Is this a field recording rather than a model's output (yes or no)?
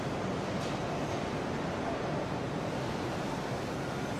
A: yes